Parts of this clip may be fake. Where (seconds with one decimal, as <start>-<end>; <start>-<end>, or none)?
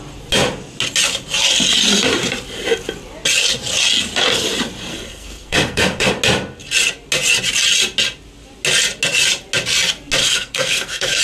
4.9-6.1; 10.2-11.2